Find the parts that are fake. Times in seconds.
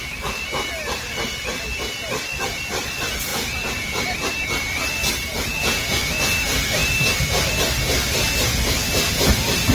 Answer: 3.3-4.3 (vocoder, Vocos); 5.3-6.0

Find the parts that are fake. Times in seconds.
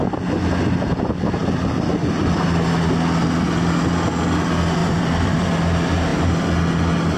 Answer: 4.8-5.5 (vocoder, BigVGAN v2)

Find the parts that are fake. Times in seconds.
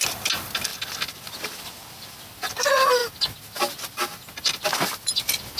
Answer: none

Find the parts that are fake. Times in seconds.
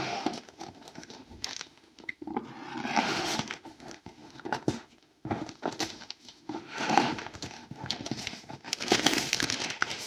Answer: 0.0-2.3 (autoencoder, DAC-VAE); 3.0-10.1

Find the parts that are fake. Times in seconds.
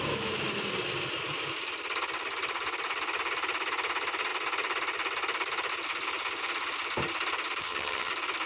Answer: 7.6-8.1 (vocoder, HiFi-GAN)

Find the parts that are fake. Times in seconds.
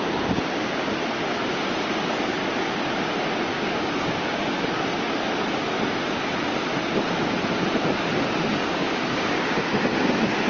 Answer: 3.5-4.8 (codec, DAC); 8.5-9.8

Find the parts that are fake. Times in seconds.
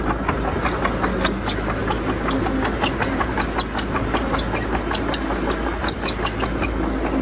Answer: none